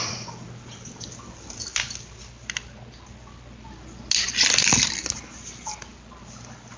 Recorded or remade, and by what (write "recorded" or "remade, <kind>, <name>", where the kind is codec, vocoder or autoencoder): recorded